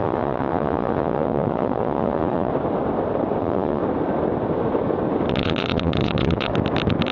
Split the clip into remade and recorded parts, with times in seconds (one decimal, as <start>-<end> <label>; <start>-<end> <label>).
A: 0.0-2.5 remade; 2.5-3.4 recorded; 3.4-3.8 remade; 3.8-5.3 recorded; 5.3-6.5 remade; 6.5-7.1 recorded